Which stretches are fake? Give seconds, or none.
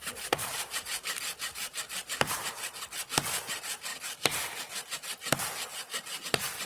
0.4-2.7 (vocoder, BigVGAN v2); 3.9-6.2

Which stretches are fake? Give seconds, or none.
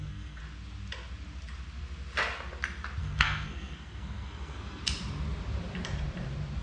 0.0-0.4 (codec, SNAC); 3.0-4.8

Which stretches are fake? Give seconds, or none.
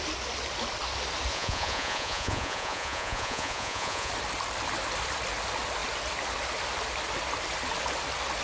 1.3-4.1 (vocoder, Vocos)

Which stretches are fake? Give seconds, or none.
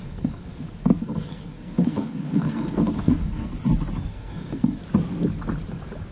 0.0-3.5 (codec, SNAC); 4.1-4.8